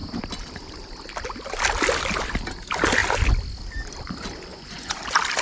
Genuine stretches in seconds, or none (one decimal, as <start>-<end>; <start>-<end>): 0.0-4.5; 5.0-5.4